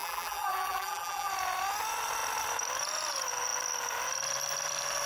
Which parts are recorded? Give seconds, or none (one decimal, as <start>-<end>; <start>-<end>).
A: 1.3-5.1